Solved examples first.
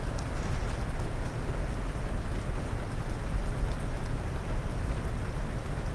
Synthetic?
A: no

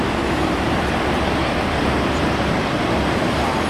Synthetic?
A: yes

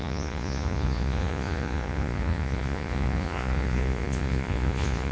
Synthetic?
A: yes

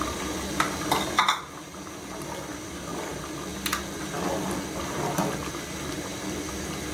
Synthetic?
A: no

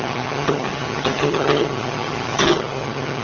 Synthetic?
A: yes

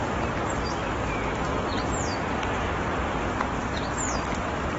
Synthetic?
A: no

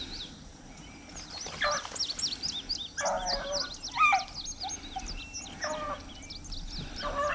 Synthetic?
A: no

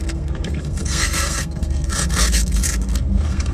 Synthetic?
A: yes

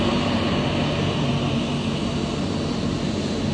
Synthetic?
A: no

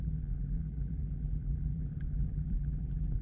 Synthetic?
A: yes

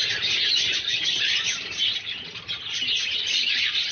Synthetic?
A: no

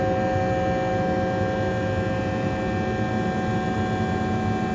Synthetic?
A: no